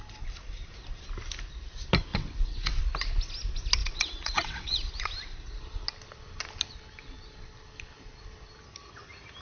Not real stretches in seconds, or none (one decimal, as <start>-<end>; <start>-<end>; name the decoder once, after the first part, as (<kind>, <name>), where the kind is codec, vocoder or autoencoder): 2.1-2.8 (vocoder, WaveNeXt); 3.8-4.9